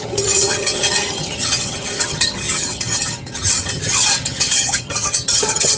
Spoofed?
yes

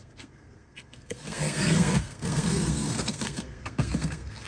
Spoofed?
yes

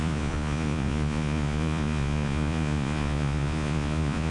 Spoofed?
yes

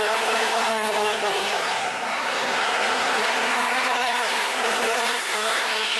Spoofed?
yes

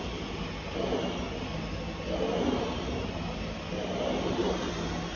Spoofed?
no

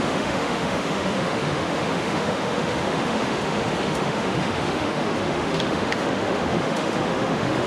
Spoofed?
yes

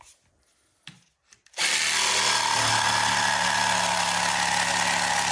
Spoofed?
no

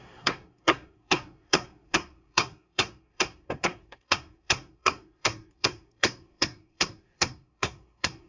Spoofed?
yes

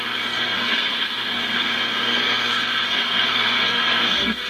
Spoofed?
yes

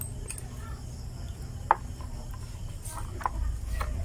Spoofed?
no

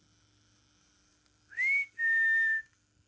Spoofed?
no